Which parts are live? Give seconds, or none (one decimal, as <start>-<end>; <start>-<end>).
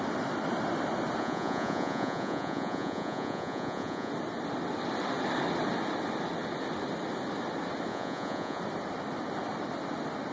0.0-1.2; 4.1-7.9; 8.6-10.3